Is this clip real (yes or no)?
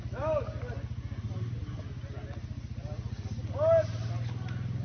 yes